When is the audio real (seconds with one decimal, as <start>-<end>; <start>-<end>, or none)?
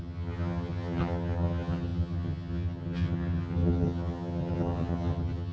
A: none